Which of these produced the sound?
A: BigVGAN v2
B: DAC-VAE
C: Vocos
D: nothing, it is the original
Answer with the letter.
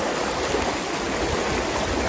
D